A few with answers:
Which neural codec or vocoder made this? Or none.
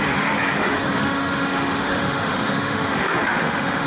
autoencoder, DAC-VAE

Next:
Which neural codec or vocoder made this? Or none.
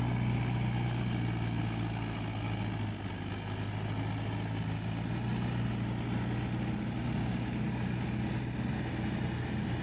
none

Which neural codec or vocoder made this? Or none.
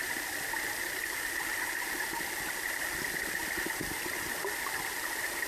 none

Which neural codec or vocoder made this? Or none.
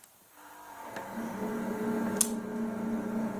none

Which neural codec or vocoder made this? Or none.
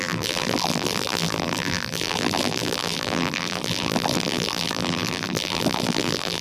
vocoder, BigVGAN v2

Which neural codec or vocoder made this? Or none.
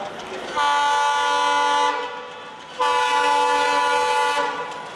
none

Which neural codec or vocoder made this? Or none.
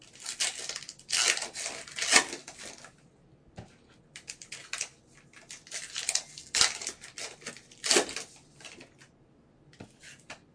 none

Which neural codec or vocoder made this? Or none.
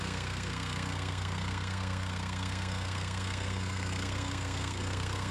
codec, SNAC